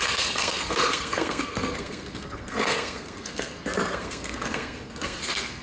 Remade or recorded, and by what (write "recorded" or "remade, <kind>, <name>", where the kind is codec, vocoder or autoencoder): remade, codec, SNAC